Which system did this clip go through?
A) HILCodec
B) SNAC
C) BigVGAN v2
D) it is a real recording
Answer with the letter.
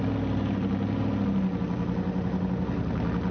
D